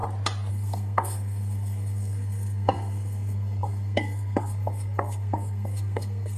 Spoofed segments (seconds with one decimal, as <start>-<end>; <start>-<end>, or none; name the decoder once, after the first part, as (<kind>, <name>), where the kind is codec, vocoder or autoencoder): 0.5-6.4 (codec, SNAC)